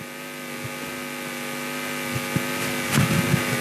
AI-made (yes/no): no